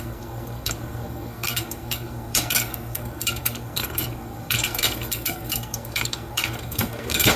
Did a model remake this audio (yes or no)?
yes